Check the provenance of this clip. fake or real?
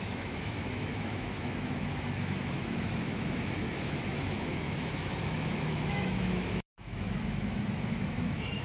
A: fake